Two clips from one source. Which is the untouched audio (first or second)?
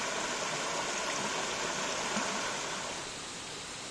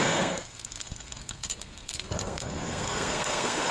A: first